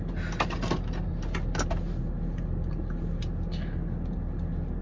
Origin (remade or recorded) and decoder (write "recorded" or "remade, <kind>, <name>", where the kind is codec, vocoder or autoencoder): recorded